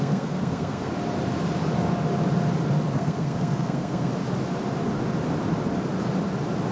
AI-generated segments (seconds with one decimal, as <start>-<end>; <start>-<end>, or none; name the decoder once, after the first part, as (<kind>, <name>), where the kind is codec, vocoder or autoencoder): 0.0-0.9 (codec, SNAC); 2.9-4.1